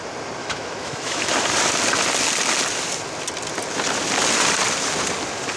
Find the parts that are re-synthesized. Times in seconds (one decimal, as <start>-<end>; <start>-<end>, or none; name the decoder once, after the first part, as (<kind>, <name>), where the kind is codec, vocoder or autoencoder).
0.4-1.3 (autoencoder, DAC-VAE)